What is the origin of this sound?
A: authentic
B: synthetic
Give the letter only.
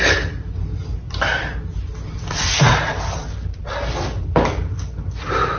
A